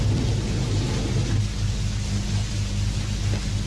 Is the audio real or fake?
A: real